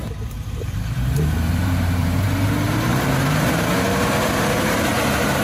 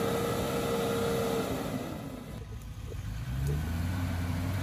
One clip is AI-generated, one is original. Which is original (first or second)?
second